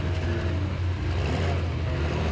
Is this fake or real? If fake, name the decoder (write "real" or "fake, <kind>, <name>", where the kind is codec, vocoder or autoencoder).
real